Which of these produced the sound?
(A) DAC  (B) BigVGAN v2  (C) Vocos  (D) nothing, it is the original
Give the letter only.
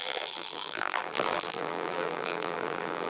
B